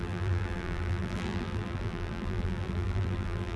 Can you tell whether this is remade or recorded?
remade